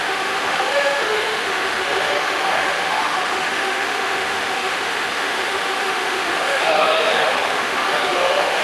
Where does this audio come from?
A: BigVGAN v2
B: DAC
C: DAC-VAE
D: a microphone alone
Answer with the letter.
C